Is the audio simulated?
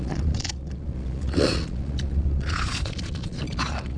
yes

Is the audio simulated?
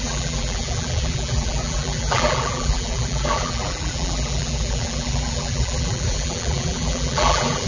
yes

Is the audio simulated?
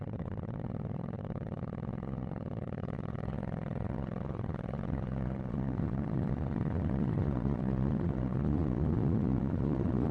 yes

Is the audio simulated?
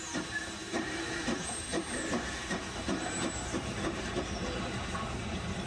yes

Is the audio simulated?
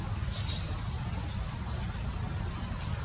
no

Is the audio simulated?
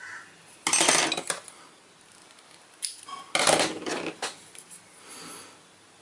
no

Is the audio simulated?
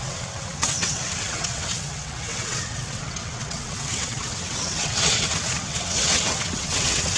yes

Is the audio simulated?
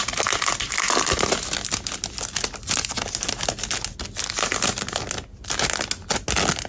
no